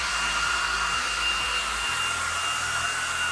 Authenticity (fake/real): real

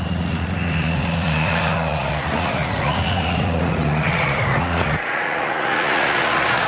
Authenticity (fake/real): fake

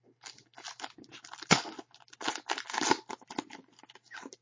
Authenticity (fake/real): real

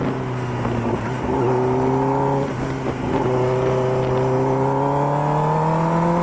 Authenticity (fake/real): real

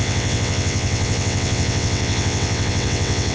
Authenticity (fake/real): fake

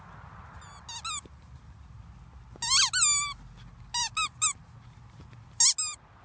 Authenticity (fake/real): real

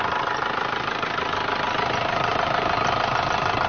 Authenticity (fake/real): real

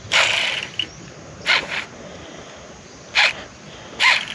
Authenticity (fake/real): real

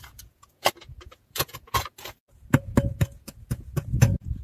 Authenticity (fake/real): fake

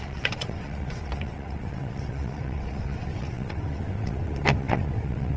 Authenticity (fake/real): fake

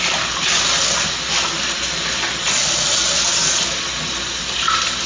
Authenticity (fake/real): real